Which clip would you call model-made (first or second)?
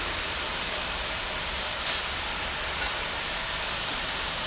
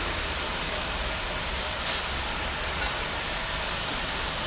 first